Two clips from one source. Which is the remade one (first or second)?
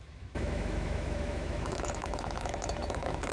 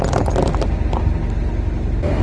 first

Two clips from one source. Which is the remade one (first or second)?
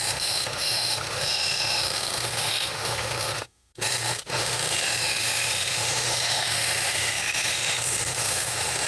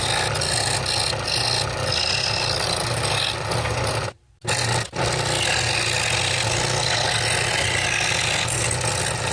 first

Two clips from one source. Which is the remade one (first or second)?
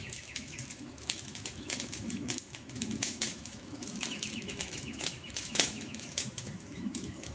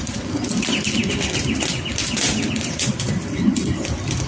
first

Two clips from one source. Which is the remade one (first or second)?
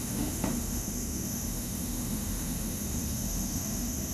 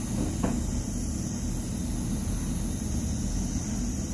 first